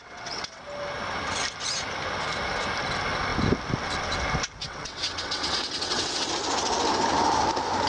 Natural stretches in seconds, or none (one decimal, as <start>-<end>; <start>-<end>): 0.6-4.6; 6.3-7.9